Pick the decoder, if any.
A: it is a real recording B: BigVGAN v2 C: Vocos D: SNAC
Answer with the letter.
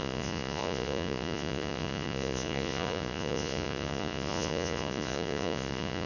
C